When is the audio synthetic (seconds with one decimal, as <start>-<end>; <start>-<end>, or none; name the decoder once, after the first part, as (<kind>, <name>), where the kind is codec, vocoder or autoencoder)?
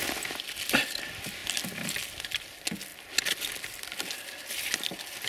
none